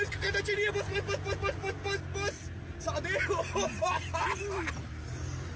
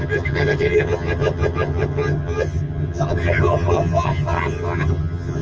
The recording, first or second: first